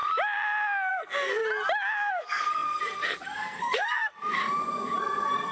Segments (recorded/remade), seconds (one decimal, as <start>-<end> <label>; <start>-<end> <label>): 0.0-0.9 recorded; 0.9-1.4 remade; 1.4-2.1 recorded; 2.1-4.4 remade; 4.4-5.0 recorded; 5.0-5.5 remade